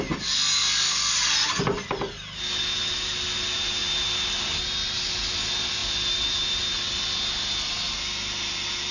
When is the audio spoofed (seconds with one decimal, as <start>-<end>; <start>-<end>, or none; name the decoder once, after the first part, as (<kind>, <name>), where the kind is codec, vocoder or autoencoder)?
none